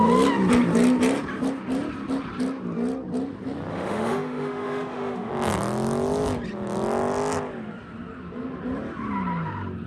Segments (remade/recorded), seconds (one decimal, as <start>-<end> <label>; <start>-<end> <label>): 0.0-3.7 recorded; 3.7-5.3 remade; 5.3-9.9 recorded